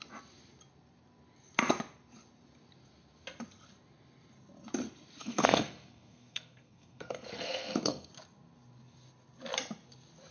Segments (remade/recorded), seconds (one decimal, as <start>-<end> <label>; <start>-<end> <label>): 0.0-5.2 recorded; 5.2-8.1 remade; 8.1-10.3 recorded